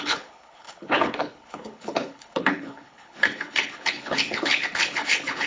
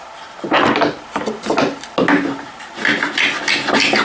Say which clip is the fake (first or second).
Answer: first